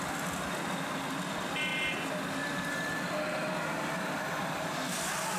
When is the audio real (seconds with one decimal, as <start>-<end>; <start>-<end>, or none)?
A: 0.0-5.4